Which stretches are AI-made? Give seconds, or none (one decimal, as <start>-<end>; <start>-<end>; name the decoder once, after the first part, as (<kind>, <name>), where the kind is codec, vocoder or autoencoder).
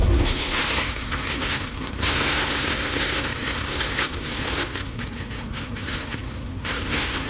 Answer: 0.0-7.3 (codec, SNAC)